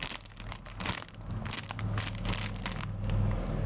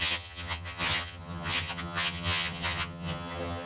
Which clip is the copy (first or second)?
second